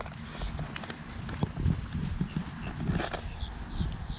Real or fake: real